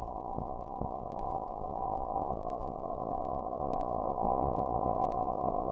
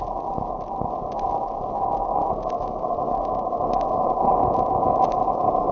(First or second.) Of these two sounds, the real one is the second